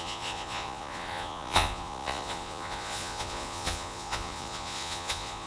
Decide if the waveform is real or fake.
fake